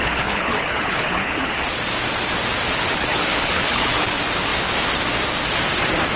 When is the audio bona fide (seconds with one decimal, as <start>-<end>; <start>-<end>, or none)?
1.6-3.1; 4.1-6.2